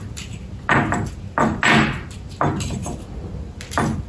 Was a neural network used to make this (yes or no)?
no